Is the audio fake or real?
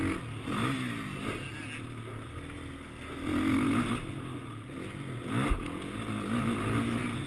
real